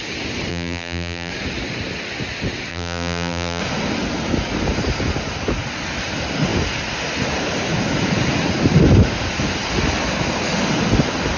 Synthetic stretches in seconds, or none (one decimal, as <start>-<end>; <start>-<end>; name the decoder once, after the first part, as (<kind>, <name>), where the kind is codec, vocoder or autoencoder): 0.5-1.3 (vocoder, BigVGAN v2); 2.7-3.6